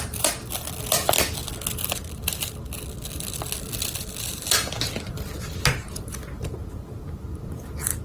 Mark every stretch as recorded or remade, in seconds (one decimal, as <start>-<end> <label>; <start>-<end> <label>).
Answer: 0.0-8.0 recorded